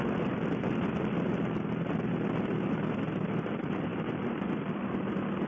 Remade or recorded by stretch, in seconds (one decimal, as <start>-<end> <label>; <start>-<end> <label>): 0.0-3.9 recorded; 3.9-5.1 remade; 5.1-5.5 recorded